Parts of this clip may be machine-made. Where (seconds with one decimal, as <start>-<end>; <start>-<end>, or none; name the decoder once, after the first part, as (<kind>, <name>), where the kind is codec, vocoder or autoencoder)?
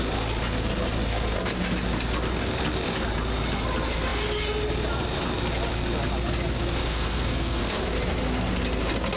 6.8-7.6 (codec, SNAC)